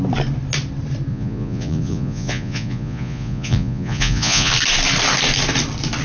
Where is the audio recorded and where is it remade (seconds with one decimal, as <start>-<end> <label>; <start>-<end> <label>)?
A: 0.0-1.1 recorded; 1.1-4.5 remade; 4.5-6.0 recorded